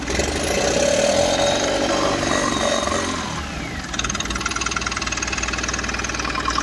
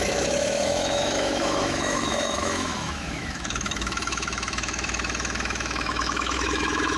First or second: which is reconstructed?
second